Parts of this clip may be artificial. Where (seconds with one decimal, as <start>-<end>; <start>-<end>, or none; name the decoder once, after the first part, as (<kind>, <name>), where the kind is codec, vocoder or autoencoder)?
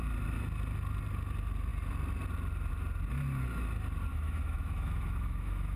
4.1-5.8 (autoencoder, DAC-VAE)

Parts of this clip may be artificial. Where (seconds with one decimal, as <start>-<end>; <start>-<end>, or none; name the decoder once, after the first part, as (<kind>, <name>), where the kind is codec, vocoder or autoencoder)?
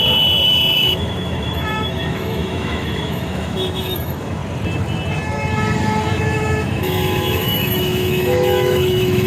0.0-4.4 (autoencoder, DAC-VAE); 6.2-9.3